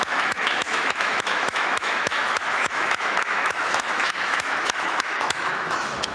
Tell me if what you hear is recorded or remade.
remade